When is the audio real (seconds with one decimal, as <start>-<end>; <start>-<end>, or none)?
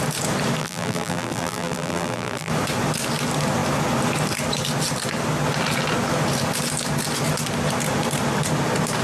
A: 0.0-0.6; 2.5-9.0